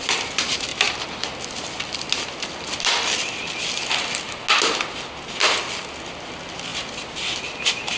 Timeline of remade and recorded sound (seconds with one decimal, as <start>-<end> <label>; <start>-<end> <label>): 0.0-8.0 recorded